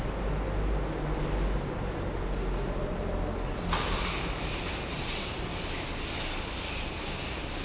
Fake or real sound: real